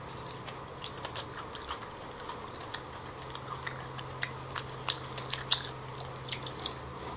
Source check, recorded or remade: recorded